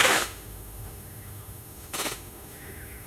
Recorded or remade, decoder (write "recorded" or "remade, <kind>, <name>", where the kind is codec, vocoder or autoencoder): remade, autoencoder, DAC-VAE